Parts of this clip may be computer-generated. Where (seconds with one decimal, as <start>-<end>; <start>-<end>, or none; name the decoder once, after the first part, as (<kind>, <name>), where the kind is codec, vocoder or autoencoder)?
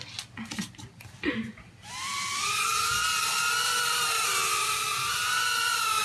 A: none